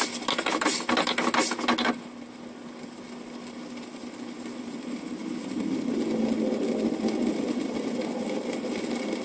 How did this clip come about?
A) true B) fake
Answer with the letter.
A